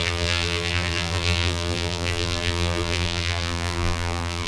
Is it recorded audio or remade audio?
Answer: remade